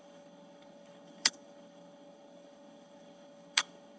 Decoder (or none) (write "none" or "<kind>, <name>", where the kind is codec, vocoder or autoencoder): codec, HILCodec